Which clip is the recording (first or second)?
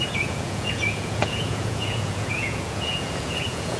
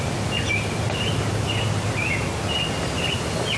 second